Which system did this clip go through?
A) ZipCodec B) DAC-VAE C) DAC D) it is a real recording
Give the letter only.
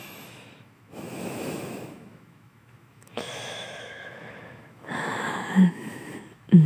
B